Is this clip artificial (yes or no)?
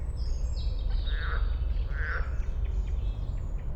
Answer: no